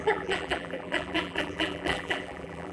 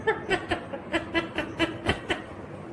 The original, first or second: second